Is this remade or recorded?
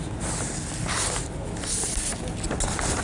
recorded